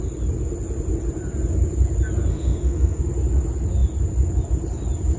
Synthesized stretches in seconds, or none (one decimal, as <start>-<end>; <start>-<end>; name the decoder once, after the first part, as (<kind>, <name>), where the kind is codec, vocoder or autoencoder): 2.3-3.0 (autoencoder, DAC-VAE)

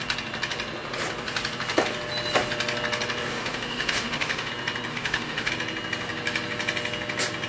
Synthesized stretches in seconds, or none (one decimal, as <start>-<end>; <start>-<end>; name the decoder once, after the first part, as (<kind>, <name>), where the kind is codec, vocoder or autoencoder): 3.3-4.5 (autoencoder, DAC-VAE); 4.9-5.5

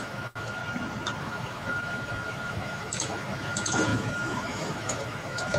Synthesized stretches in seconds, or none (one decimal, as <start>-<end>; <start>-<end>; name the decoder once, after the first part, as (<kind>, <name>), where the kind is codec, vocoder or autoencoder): 0.0-0.6 (autoencoder, DAC-VAE); 1.2-5.6

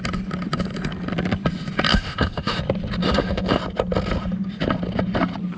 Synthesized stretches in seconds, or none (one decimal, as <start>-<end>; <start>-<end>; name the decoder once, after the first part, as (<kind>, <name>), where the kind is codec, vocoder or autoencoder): 1.9-2.6 (autoencoder, DAC-VAE); 3.0-3.6

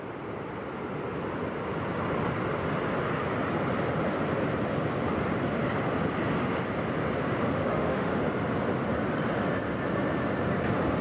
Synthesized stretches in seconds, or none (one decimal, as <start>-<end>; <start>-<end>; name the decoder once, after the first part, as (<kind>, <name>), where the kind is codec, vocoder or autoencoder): 7.6-8.2 (autoencoder, DAC-VAE)

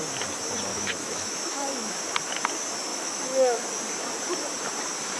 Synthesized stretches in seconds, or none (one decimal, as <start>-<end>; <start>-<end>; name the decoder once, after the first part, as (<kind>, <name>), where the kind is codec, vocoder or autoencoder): 0.7-2.0 (autoencoder, DAC-VAE); 2.9-3.7

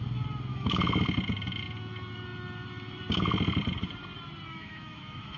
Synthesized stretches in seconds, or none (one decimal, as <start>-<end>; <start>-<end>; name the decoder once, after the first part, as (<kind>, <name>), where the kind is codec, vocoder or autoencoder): 0.5-1.0 (autoencoder, DAC-VAE); 4.5-5.4